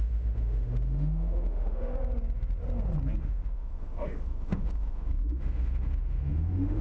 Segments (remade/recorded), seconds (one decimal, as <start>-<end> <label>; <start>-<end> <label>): 0.0-1.9 remade; 1.9-3.2 recorded; 3.2-6.8 remade